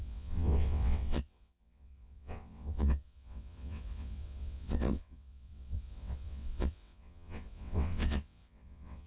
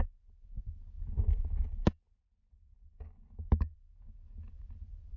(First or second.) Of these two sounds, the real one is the second